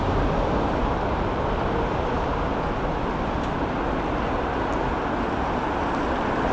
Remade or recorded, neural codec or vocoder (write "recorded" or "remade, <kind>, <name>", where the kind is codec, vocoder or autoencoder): recorded